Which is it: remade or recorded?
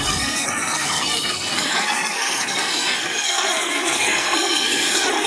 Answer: remade